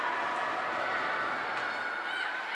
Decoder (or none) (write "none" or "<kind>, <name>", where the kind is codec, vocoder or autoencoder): none